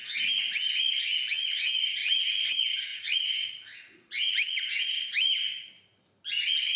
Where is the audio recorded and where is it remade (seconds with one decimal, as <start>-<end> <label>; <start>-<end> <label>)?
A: 0.0-2.0 recorded; 2.0-2.5 remade; 2.5-2.9 recorded; 2.9-4.7 remade; 4.7-6.8 recorded